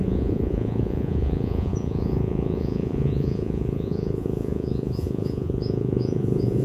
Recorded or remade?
remade